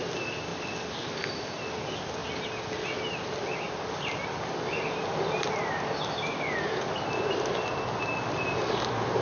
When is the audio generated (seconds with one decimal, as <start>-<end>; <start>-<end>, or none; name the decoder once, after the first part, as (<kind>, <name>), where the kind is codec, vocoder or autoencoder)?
0.5-1.6 (vocoder, BigVGAN v2); 2.2-3.8